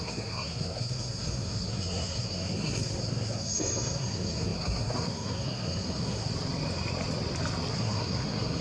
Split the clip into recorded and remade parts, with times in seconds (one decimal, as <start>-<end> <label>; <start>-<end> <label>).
0.0-6.3 remade; 6.3-7.7 recorded; 7.7-8.6 remade